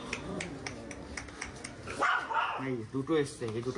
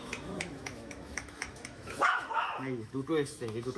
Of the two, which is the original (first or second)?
first